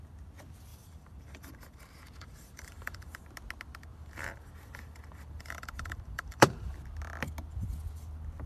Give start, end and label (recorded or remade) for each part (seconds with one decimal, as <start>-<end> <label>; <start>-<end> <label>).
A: 0.0-0.7 recorded; 0.7-3.2 remade; 3.2-3.9 recorded; 3.9-6.8 remade; 6.8-8.5 recorded